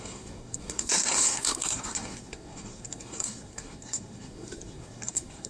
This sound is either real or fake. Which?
fake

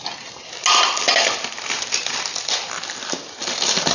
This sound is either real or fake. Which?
real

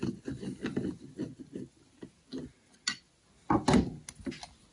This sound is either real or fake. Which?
real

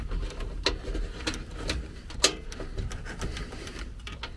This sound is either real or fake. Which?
real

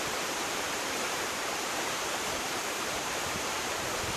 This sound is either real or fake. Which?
fake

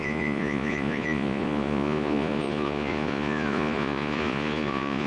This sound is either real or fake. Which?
fake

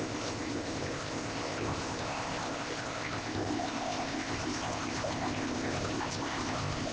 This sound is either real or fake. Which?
fake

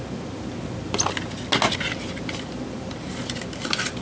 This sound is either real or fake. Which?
real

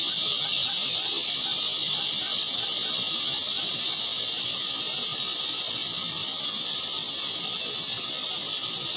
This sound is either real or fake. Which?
real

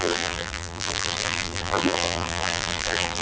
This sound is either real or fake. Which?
fake